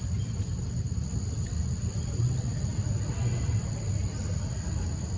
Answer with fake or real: real